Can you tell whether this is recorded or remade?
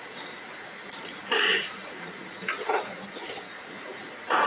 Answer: remade